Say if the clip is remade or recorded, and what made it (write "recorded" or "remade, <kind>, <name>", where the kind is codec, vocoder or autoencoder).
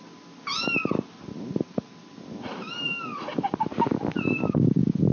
recorded